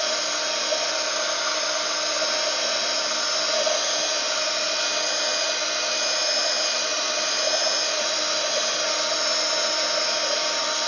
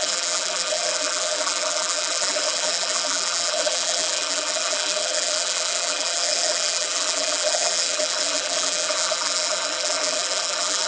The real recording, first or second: first